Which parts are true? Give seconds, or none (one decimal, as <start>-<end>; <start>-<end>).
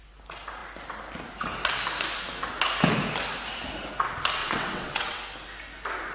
0.0-4.4; 5.2-6.1